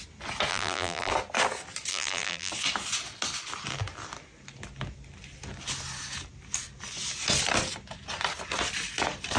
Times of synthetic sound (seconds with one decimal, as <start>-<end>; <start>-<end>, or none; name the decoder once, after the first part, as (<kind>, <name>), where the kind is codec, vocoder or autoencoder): 0.5-1.1 (vocoder, BigVGAN v2); 1.9-2.5